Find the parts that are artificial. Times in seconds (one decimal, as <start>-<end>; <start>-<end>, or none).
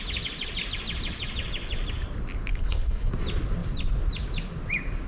2.5-3.1